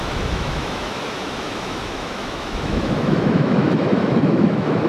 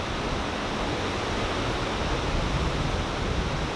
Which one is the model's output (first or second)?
first